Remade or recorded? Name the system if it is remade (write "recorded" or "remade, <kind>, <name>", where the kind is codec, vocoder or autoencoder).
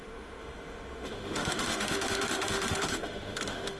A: remade, autoencoder, DAC-VAE